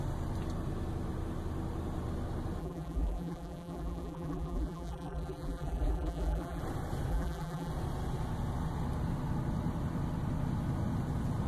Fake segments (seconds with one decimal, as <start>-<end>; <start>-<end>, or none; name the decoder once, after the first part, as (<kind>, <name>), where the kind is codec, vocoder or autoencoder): 2.6-6.6 (vocoder, BigVGAN v2); 7.1-7.7